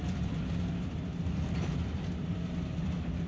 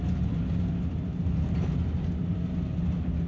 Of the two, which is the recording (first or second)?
second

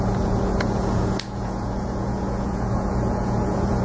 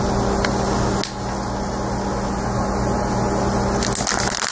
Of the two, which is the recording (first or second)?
second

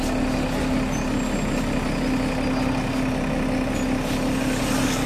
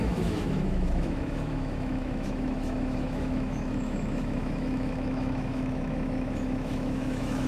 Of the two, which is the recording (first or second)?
first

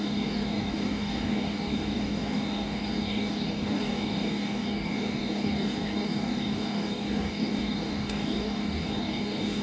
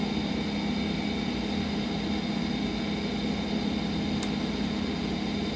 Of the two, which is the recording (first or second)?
second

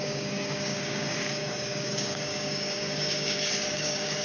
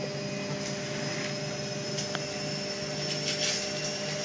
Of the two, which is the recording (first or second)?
second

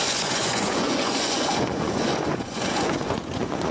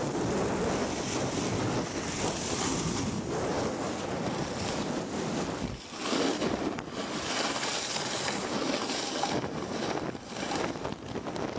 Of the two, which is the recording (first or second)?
second